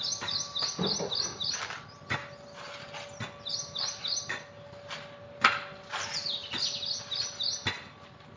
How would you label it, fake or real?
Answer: real